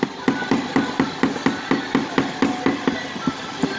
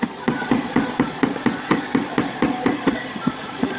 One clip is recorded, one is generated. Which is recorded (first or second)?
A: first